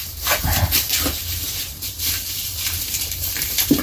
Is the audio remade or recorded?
remade